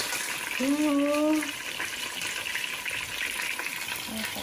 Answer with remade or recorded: recorded